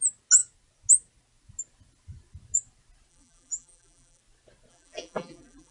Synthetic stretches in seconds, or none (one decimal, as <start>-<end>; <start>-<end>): 3.1-4.2; 4.7-5.7